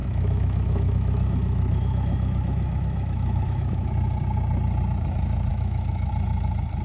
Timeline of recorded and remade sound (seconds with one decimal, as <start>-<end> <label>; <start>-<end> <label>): 0.0-3.9 remade; 3.9-5.5 recorded; 5.5-6.1 remade; 6.1-6.8 recorded

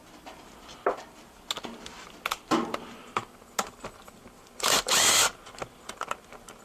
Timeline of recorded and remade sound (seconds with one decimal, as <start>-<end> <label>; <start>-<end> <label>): 0.0-6.6 recorded

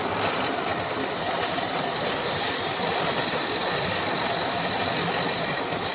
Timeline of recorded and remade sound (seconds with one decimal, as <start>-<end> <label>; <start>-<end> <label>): 0.0-5.9 recorded

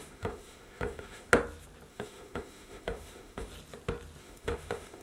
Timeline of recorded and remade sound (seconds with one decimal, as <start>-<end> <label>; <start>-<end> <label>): 0.0-1.3 remade; 1.3-1.9 recorded; 1.9-3.5 remade; 3.5-4.2 recorded; 4.2-5.0 remade

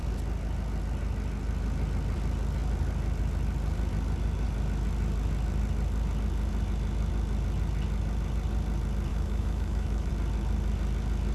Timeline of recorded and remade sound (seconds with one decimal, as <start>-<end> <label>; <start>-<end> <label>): 0.0-9.1 recorded; 9.1-10.1 remade; 10.1-11.3 recorded

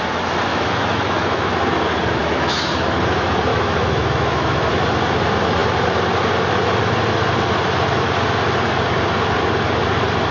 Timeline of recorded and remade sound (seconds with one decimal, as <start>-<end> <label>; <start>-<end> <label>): 0.0-0.5 recorded; 0.5-1.5 remade; 1.5-2.2 recorded; 2.2-2.7 remade; 2.7-3.5 recorded; 3.5-4.7 remade; 4.7-10.3 recorded

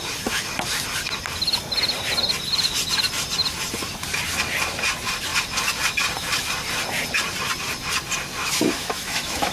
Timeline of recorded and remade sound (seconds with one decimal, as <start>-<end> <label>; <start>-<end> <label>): 0.0-8.4 recorded; 8.4-9.5 remade

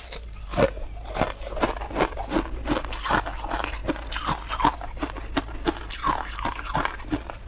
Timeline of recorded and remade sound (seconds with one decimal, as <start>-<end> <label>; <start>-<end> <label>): 0.0-7.5 recorded